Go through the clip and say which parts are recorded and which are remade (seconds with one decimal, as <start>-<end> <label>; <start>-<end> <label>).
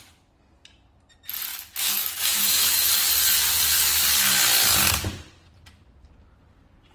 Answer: 0.0-1.5 recorded; 1.5-2.9 remade; 2.9-6.9 recorded